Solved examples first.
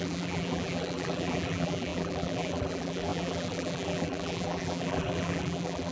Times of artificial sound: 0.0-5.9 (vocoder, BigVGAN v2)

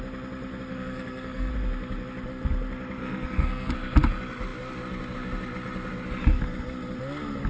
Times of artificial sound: 0.7-1.5 (codec, SNAC); 3.0-3.7

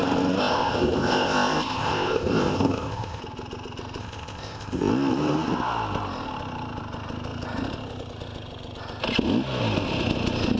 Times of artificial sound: 0.4-3.2 (codec, ZipCodec); 4.0-4.9

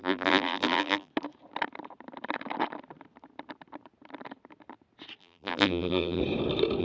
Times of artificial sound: 0.0-1.1 (vocoder, BigVGAN v2); 5.2-6.2

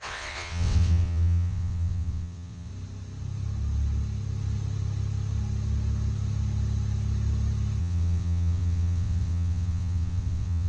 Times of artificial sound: 0.0-2.7 (vocoder, WaveNeXt); 7.8-10.7

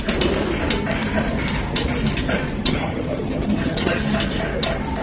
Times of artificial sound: 2.6-4.0 (vocoder, HiFi-GAN)

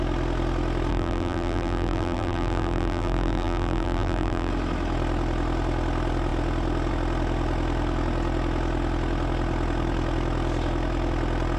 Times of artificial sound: 0.9-4.5 (vocoder, BigVGAN v2)